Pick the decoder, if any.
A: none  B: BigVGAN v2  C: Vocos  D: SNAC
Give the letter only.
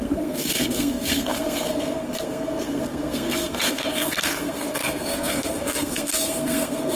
D